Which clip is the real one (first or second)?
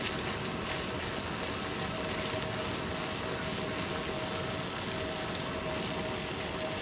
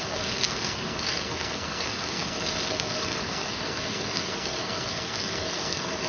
first